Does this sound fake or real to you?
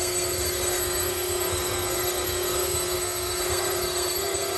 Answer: fake